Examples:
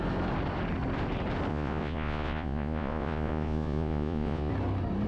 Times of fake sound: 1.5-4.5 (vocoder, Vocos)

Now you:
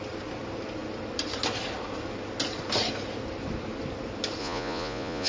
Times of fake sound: 4.4-5.3 (vocoder, Vocos)

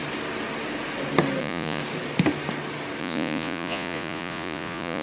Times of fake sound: 1.4-1.8 (vocoder, Vocos); 3.0-5.0

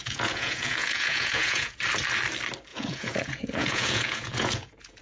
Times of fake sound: 0.0-1.8 (vocoder, Vocos); 2.7-5.0

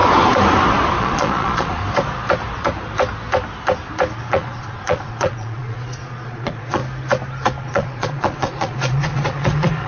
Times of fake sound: 1.0-1.8 (vocoder, Vocos); 4.2-6.8; 7.6-9.9

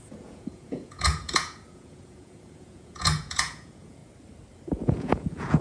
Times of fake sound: 0.0-4.0 (vocoder, Vocos); 4.8-5.6

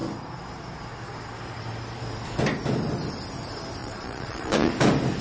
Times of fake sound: 3.8-4.7 (vocoder, Vocos)